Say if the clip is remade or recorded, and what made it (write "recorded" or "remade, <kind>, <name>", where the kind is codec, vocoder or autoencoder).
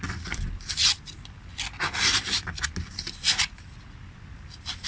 recorded